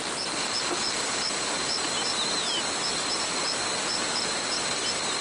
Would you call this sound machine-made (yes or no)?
no